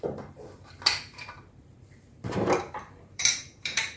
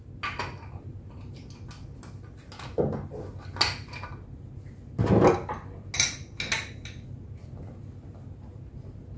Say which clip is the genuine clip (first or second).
second